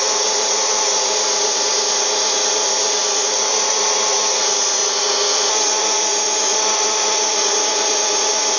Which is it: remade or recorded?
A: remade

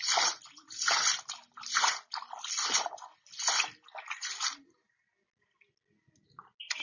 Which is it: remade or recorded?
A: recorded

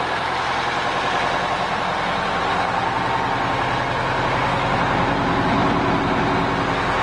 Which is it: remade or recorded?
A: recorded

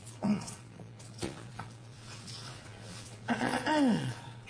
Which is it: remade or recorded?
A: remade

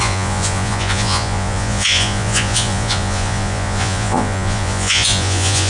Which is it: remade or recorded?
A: remade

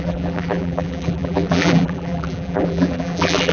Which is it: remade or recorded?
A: remade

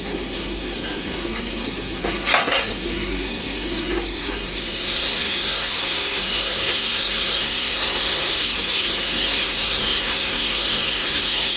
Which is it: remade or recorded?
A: remade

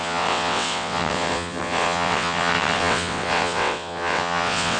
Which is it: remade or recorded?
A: remade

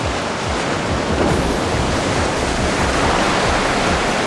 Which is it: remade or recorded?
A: recorded